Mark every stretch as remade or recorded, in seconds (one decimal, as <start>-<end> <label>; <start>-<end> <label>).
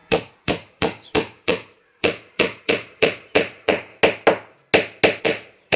0.0-3.9 remade; 3.9-5.2 recorded; 5.2-5.8 remade